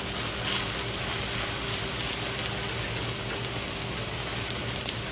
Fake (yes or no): no